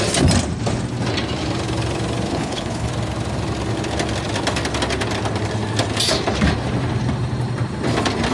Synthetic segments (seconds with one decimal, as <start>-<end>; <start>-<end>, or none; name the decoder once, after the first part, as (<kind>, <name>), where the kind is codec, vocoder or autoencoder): 2.3-2.9 (codec, HILCodec)